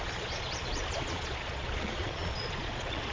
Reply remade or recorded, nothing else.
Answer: remade